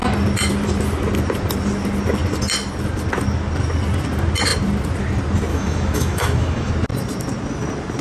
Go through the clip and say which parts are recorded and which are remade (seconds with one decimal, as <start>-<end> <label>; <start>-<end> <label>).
0.0-5.5 recorded; 5.5-6.7 remade; 6.7-8.0 recorded